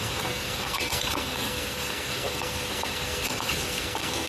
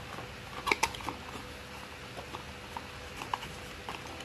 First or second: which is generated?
first